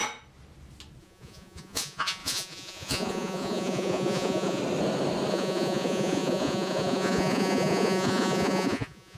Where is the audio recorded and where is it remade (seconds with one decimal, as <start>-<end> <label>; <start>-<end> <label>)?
0.0-1.0 recorded; 1.0-4.6 remade; 4.6-5.3 recorded; 5.3-9.2 remade